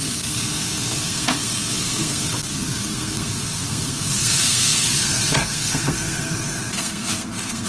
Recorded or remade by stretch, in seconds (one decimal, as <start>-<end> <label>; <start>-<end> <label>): 0.0-7.7 remade